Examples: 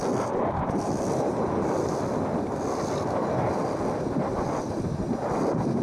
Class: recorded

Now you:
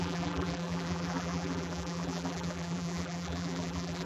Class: remade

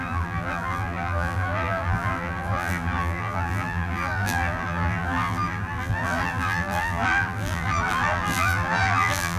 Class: remade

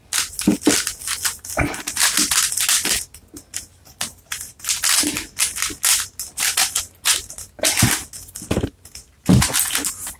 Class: recorded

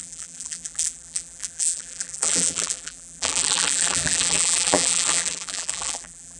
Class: remade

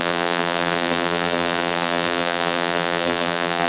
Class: remade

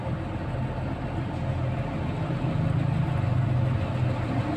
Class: recorded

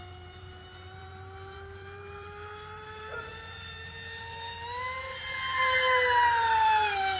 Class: remade